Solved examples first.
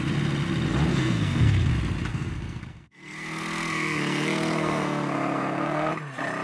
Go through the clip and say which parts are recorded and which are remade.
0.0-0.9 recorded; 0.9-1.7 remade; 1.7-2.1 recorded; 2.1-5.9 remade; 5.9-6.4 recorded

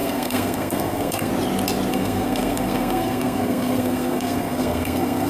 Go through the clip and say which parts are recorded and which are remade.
0.0-1.3 remade; 1.3-1.9 recorded; 1.9-5.3 remade

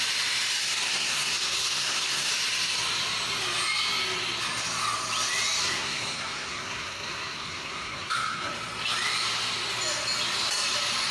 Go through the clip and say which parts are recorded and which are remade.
0.0-0.6 recorded; 0.6-2.3 remade; 2.3-5.6 recorded; 5.6-8.5 remade; 8.5-11.1 recorded